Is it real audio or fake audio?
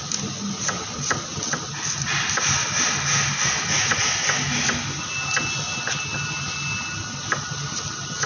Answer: real